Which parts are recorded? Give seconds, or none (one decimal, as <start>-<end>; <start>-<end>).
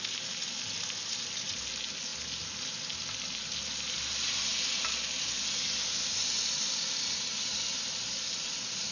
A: 0.0-8.9